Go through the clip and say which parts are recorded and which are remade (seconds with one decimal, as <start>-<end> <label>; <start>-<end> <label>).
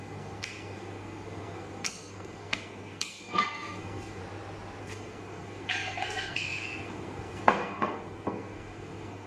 0.0-4.2 remade; 4.2-4.8 recorded; 4.8-9.3 remade